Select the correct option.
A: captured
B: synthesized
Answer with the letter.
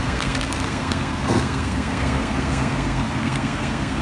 B